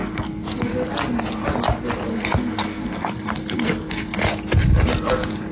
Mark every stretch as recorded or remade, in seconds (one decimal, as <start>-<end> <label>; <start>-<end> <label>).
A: 0.0-0.7 remade; 0.7-2.1 recorded; 2.1-4.2 remade; 4.2-5.5 recorded